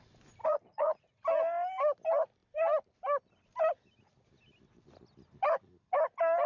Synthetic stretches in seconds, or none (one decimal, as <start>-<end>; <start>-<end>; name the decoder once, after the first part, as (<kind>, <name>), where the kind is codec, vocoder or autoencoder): 0.4-1.2 (vocoder, Vocos)